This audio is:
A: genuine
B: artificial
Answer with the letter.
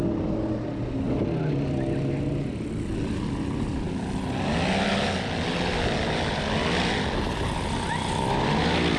A